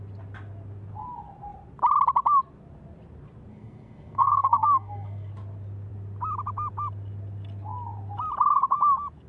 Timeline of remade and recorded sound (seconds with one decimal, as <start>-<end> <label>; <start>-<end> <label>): 0.0-3.5 recorded; 3.5-5.3 remade; 5.3-9.3 recorded